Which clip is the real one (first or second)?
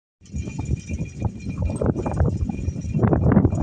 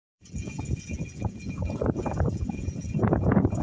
first